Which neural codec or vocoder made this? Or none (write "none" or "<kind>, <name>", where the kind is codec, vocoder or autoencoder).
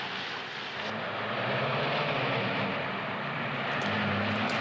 none